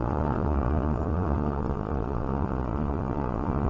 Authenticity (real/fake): fake